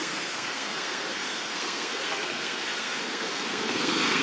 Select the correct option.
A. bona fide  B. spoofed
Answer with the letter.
B